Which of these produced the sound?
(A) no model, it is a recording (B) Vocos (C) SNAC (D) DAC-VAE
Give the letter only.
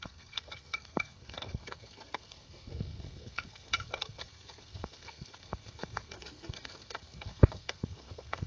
C